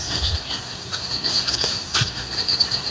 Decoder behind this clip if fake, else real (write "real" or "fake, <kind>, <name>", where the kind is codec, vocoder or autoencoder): fake, codec, SNAC